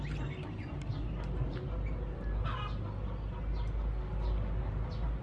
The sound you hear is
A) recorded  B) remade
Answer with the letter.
A